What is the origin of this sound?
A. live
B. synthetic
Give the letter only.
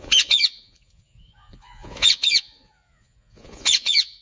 B